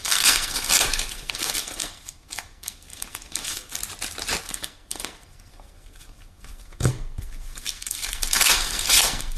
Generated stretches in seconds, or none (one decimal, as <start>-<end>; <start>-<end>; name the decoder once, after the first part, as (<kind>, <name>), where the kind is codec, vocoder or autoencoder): 0.0-3.8 (codec, SNAC); 4.4-9.4